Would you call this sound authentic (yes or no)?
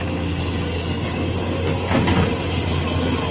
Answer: yes